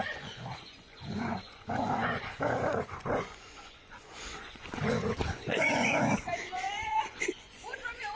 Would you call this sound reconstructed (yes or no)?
yes